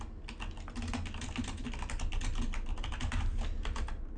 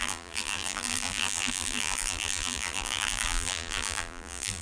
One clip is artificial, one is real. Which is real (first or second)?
first